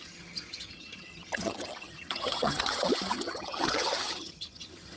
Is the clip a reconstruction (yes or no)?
yes